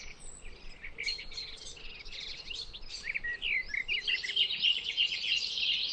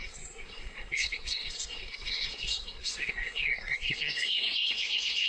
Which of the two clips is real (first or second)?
first